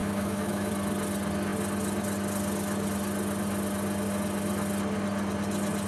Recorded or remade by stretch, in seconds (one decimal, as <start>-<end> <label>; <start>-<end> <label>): 0.0-0.7 remade; 0.7-5.9 recorded